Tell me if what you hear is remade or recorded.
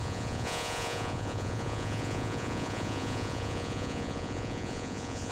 remade